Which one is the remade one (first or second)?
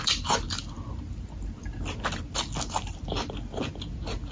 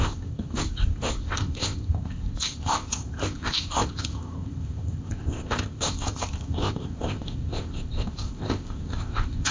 second